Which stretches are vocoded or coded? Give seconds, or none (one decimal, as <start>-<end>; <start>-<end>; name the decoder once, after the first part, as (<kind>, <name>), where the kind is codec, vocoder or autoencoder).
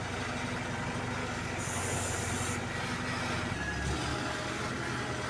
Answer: 1.2-2.3 (codec, DAC); 4.1-4.6